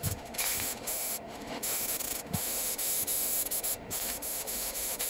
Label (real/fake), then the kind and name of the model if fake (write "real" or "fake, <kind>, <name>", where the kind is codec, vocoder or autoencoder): fake, autoencoder, DAC-VAE